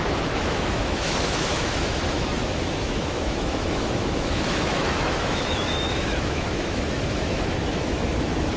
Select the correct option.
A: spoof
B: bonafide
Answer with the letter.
A